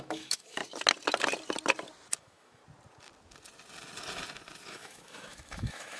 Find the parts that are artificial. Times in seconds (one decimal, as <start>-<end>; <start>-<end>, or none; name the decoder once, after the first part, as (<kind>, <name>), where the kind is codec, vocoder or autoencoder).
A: 0.0-0.6 (autoencoder, DAC-VAE); 2.2-2.6; 4.7-6.0